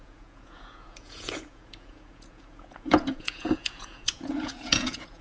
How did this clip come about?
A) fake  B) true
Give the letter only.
A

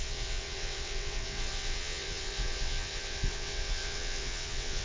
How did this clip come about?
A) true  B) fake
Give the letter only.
B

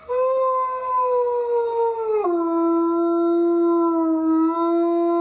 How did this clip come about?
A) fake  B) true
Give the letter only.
B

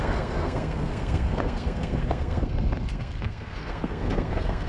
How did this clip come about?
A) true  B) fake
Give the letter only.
B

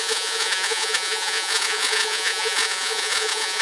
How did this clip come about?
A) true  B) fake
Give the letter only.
B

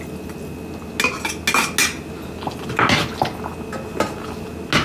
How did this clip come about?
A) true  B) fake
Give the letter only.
A